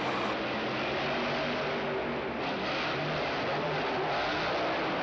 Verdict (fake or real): real